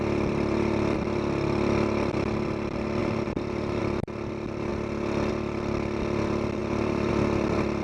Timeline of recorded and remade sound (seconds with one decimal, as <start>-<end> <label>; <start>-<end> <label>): 0.0-3.0 recorded; 3.0-3.8 remade; 3.8-6.6 recorded; 6.6-7.1 remade; 7.1-7.8 recorded